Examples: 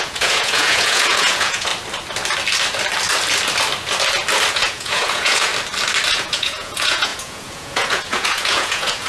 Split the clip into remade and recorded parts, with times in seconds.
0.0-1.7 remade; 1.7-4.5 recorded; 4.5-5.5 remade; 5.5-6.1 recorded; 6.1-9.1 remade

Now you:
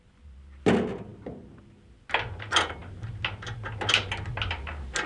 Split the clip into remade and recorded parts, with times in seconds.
0.0-5.1 recorded

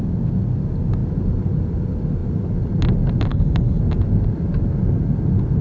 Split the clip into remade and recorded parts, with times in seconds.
0.0-3.3 recorded; 3.3-3.8 remade; 3.8-5.6 recorded

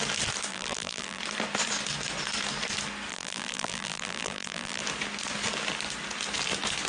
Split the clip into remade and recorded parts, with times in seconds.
0.0-0.5 recorded; 0.5-1.2 remade; 1.2-3.1 recorded; 3.1-4.8 remade; 4.8-6.9 recorded